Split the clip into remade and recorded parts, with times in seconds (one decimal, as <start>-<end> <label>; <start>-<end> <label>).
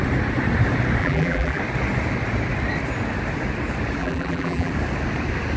0.0-1.0 recorded; 1.0-1.6 remade; 1.6-4.0 recorded; 4.0-4.7 remade; 4.7-5.6 recorded